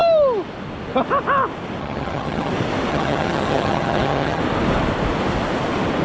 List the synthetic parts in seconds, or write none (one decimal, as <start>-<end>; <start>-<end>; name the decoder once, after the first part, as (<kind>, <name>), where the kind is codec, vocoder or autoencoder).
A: 1.8-2.5 (vocoder, HiFi-GAN); 2.9-4.4